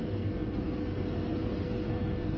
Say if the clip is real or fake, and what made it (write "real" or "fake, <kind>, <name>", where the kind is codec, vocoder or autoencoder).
fake, codec, SNAC